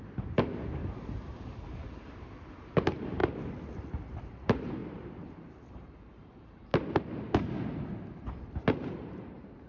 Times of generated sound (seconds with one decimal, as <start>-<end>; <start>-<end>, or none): 0.0-3.2; 4.2-6.7; 9.0-9.7